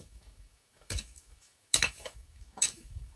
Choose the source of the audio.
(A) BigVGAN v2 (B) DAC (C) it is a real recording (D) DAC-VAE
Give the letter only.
D